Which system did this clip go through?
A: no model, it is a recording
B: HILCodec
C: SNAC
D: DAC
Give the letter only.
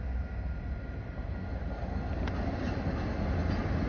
A